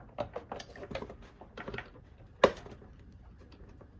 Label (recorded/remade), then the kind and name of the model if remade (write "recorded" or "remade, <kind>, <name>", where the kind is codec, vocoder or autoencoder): recorded